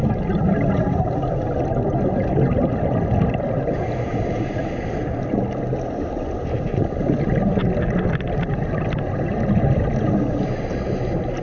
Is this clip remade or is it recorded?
recorded